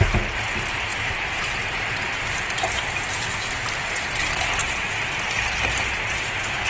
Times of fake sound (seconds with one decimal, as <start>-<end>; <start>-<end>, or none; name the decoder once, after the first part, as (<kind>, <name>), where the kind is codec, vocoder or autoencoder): 0.9-3.7 (vocoder, BigVGAN v2)